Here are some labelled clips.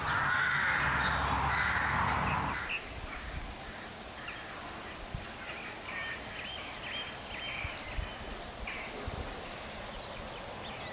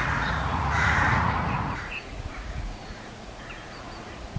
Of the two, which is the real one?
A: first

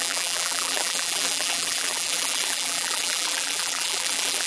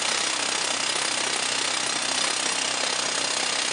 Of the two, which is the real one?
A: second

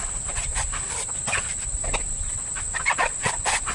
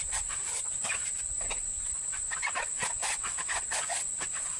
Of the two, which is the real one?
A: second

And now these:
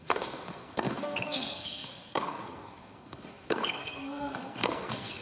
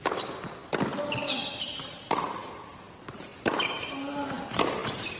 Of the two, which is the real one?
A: second